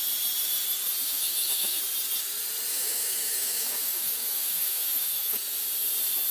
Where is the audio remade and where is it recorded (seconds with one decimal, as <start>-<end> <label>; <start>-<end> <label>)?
0.0-1.0 recorded; 1.0-1.8 remade; 1.8-2.7 recorded; 2.7-5.4 remade; 5.4-6.3 recorded